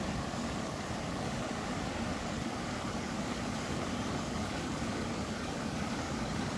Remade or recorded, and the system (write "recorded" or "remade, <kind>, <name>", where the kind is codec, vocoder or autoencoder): remade, codec, DAC